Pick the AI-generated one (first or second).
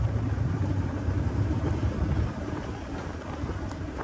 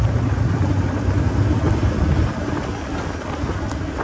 first